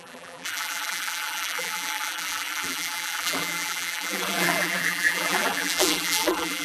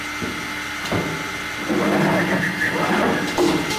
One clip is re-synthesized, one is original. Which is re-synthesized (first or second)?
first